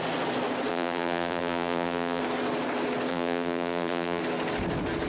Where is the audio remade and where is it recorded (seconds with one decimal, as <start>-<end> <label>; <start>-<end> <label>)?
0.0-0.7 recorded; 0.7-2.2 remade; 2.2-3.1 recorded; 3.1-4.2 remade; 4.2-5.1 recorded